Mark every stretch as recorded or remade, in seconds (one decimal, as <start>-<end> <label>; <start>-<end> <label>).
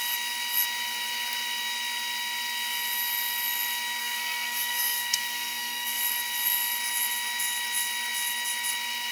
0.0-4.0 recorded; 4.0-6.0 remade; 6.0-9.1 recorded